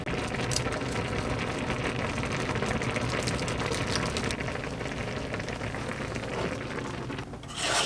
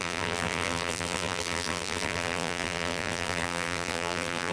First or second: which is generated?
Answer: second